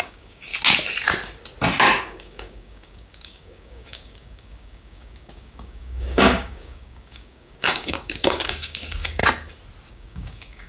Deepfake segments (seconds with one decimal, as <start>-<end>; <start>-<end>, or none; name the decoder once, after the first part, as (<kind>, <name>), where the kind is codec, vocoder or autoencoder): 0.0-0.5 (codec, DAC); 1.8-9.2; 9.9-10.7